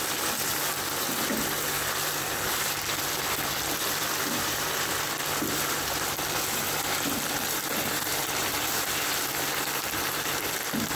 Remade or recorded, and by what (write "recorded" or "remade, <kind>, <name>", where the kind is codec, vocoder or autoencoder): remade, vocoder, BigVGAN v2